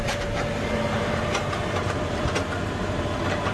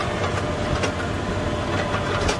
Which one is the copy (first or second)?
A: first